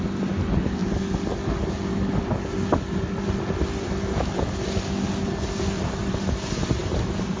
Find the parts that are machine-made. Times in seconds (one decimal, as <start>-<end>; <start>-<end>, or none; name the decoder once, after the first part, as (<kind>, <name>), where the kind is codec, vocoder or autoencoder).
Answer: none